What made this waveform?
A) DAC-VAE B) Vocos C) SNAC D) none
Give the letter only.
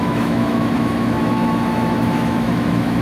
A